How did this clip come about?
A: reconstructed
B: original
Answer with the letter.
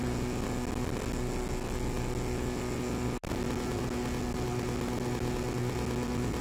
B